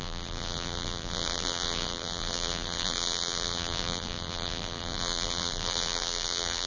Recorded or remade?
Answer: remade